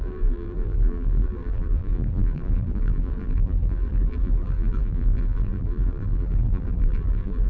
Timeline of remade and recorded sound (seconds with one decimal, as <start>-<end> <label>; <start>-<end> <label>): 0.0-7.5 remade